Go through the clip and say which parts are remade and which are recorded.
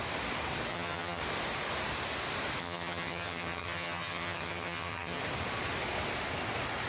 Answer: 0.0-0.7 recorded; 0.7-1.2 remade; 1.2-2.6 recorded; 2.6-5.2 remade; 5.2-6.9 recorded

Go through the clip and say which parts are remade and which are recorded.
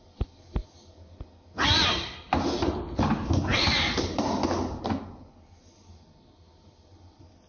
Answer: 0.0-7.5 recorded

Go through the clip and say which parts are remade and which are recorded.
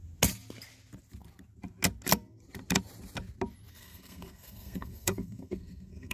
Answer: 0.0-3.7 recorded; 3.7-6.1 remade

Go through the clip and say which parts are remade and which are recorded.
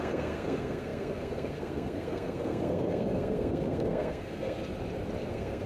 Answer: 0.0-4.6 remade; 4.6-5.3 recorded; 5.3-5.7 remade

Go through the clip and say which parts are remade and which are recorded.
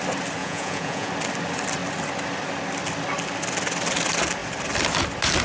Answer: 0.0-0.4 recorded; 0.4-1.1 remade; 1.1-5.4 recorded